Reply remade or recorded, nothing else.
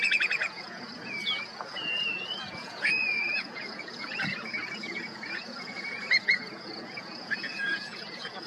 remade